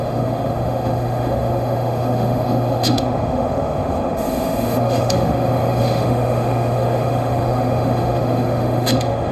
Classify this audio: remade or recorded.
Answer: remade